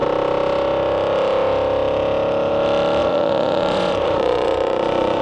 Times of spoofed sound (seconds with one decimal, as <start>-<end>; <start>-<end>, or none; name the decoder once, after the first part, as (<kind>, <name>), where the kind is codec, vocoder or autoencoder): 3.0-5.2 (vocoder, Vocos)